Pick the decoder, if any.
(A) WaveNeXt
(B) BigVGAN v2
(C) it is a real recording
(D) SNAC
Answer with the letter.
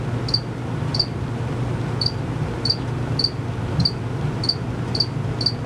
C